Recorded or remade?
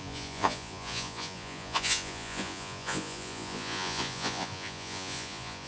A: remade